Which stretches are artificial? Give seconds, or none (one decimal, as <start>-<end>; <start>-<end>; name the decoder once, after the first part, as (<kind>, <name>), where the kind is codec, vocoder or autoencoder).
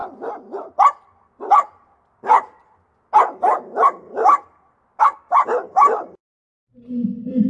1.4-2.6 (vocoder, BigVGAN v2); 5.4-7.5